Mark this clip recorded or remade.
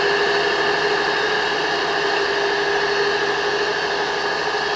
recorded